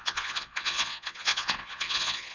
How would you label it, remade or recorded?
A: remade